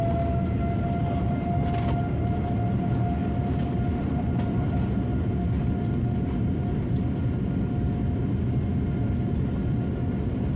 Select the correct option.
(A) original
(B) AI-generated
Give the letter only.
A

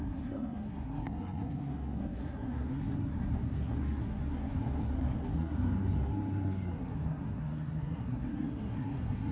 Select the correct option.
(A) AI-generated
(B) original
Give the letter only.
A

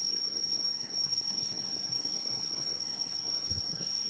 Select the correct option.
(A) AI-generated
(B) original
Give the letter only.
A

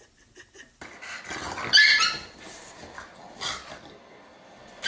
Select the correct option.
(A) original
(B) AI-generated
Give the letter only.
A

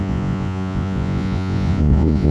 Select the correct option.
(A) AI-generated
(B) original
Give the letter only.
A